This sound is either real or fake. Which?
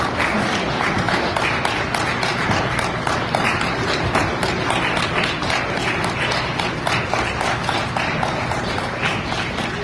real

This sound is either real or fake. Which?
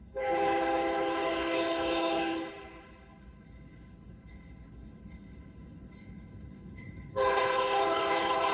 fake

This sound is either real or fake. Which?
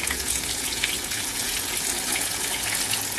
fake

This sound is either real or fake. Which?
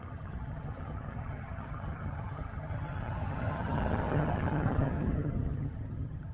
fake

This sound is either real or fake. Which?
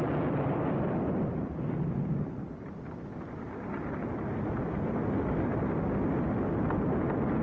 real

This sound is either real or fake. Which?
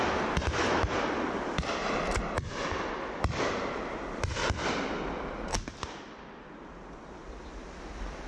real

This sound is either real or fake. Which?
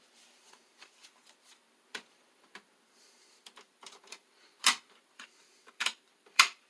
fake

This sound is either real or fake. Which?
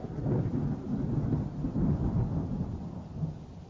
real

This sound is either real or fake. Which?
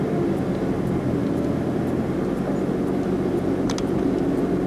real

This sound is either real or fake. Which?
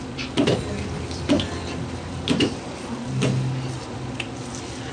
real